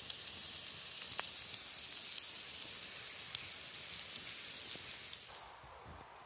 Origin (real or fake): real